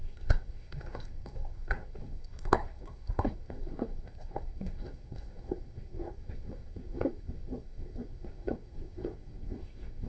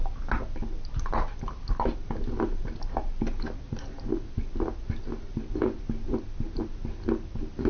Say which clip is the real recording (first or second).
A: second